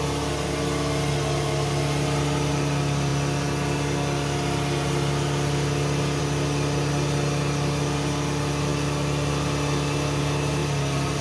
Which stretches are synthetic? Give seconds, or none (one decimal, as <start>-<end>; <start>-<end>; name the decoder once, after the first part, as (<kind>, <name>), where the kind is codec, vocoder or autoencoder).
none